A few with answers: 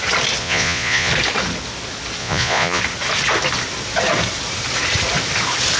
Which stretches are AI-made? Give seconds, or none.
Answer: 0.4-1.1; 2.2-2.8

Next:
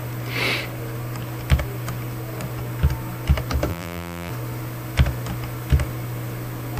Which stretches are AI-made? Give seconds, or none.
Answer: 3.7-4.3

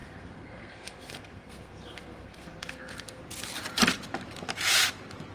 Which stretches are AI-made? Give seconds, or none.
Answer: 0.0-3.2

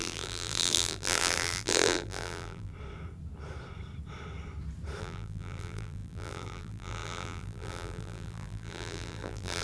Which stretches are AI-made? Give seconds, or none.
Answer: 0.0-2.7; 5.0-9.6

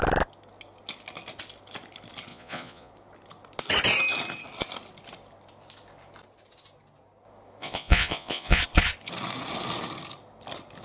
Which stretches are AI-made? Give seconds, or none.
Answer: 2.3-2.9; 7.6-8.6